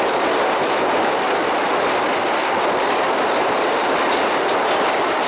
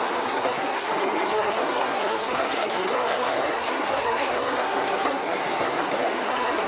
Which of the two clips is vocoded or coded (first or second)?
second